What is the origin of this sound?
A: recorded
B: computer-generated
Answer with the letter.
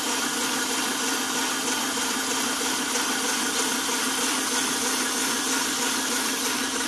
A